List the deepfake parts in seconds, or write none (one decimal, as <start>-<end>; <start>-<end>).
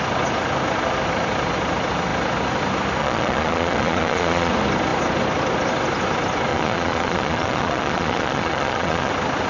3.0-4.5; 6.5-9.1